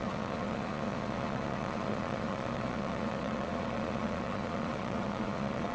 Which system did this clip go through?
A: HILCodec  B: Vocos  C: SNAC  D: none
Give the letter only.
B